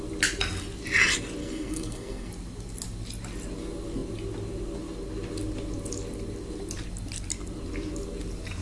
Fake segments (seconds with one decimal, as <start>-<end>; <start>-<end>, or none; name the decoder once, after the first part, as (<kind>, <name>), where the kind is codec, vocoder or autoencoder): 1.4-2.3 (codec, SNAC)